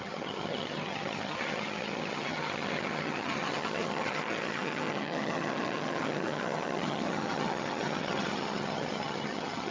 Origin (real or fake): fake